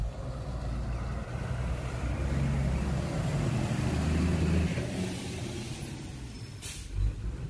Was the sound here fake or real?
real